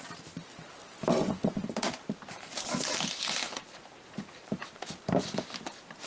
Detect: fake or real real